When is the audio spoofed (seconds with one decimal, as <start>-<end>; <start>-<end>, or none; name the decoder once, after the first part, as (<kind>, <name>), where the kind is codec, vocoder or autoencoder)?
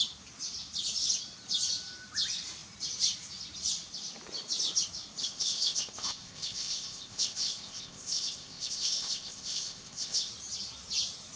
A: 5.2-10.3 (codec, ZipCodec)